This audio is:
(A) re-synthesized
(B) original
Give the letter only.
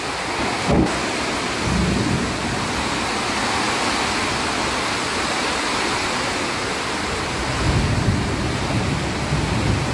B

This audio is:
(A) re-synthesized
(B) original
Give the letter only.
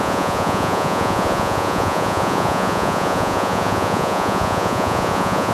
A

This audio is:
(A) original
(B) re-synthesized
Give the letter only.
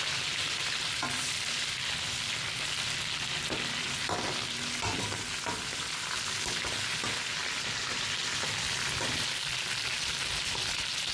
A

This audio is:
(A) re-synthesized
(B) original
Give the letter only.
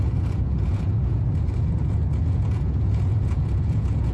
A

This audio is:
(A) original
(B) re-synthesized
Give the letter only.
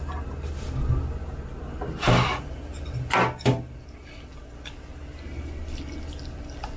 A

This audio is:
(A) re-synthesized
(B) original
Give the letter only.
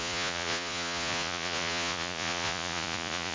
A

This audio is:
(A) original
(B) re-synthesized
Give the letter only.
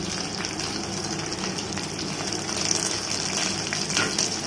A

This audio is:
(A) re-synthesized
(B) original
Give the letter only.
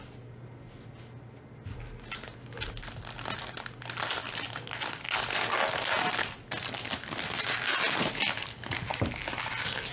B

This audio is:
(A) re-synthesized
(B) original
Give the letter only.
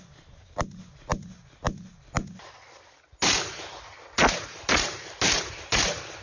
B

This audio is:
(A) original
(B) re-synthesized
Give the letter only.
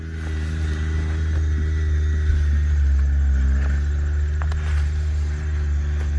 A